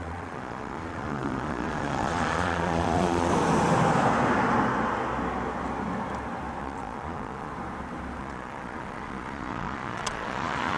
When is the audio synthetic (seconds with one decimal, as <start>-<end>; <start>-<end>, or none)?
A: 0.0-3.3; 6.6-7.5; 8.2-10.8